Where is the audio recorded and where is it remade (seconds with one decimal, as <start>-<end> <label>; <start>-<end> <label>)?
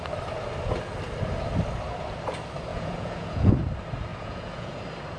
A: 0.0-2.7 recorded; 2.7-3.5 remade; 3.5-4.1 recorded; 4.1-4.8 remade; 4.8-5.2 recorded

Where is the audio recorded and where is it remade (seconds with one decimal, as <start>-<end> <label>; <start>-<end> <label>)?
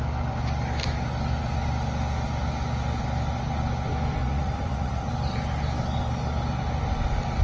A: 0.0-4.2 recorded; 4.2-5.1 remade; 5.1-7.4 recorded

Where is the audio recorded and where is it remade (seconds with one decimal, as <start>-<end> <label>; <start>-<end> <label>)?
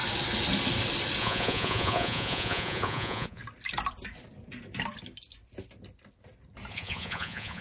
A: 0.0-1.2 recorded; 1.2-3.4 remade; 3.4-6.7 recorded; 6.7-7.6 remade